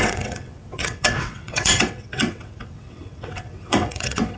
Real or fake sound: fake